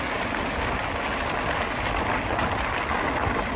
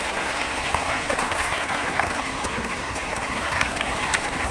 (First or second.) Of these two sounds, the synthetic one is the second